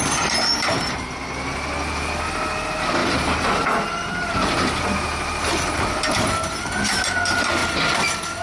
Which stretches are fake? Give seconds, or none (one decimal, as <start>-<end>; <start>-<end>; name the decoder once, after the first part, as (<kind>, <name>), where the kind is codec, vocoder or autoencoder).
none